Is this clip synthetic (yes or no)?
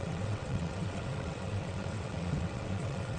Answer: yes